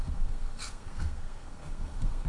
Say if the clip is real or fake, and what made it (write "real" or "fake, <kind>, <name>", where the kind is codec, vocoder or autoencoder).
fake, codec, SNAC